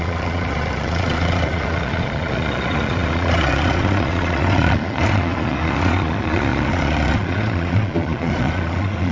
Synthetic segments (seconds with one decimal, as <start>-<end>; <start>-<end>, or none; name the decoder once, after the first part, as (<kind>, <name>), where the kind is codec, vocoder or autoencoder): 0.0-9.1 (vocoder, Vocos)